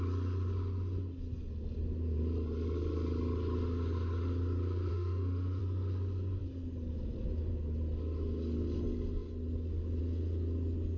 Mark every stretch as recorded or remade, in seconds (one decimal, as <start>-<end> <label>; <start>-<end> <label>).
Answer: 0.0-4.9 recorded; 4.9-5.6 remade; 5.6-11.0 recorded